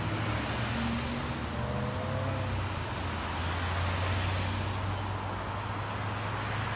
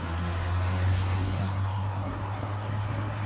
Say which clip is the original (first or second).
first